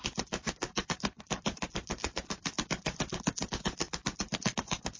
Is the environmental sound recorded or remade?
recorded